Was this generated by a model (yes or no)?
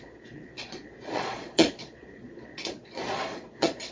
yes